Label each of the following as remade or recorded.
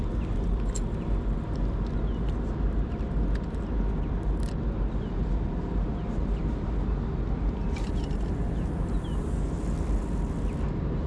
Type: recorded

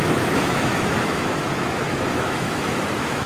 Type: remade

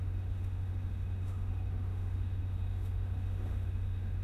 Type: remade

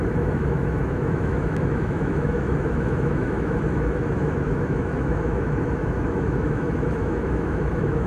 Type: remade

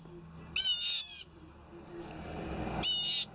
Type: recorded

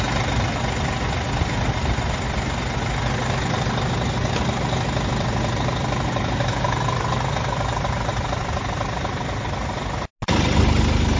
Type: recorded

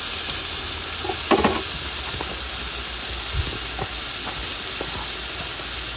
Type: recorded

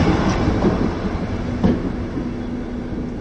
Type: recorded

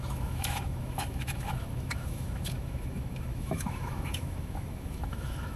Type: remade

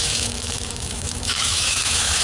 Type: remade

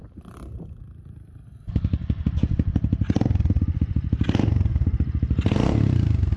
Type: recorded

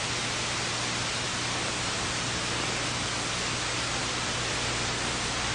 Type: recorded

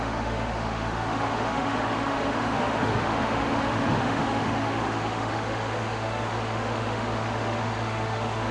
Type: remade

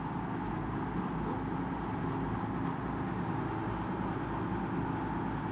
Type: recorded